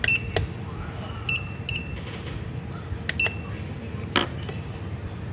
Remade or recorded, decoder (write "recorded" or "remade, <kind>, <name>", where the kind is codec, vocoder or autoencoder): recorded